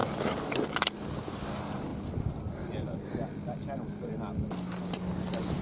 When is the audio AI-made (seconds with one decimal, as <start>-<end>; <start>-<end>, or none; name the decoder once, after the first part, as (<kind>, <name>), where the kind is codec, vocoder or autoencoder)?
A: none